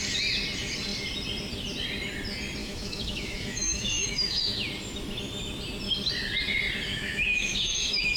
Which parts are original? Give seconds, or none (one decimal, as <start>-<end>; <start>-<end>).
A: 0.0-2.6; 4.7-6.9